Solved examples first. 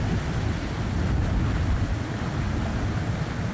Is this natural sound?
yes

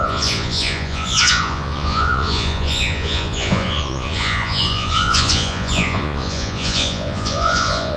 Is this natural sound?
no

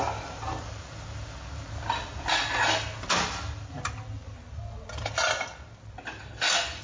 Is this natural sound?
yes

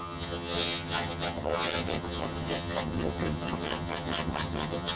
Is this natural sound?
no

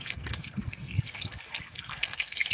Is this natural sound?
no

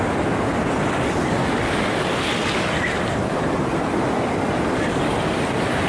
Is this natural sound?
yes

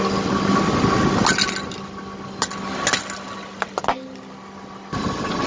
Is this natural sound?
yes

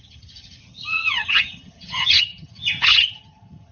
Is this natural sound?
no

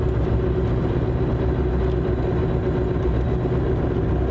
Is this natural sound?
yes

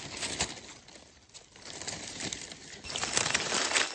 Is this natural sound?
yes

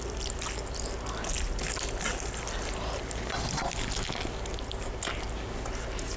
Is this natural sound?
yes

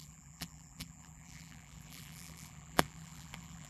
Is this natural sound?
no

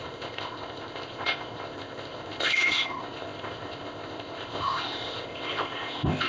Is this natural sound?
no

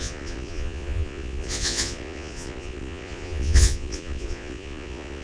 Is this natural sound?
no